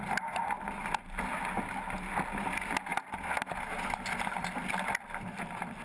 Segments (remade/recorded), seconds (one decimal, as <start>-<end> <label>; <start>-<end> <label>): 0.0-5.8 recorded